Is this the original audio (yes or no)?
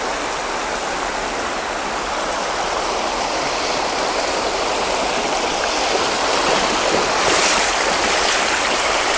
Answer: yes